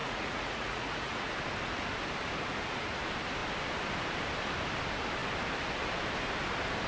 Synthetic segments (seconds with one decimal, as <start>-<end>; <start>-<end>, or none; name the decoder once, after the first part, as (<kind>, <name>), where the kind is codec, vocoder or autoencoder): 0.0-1.3 (vocoder, Vocos)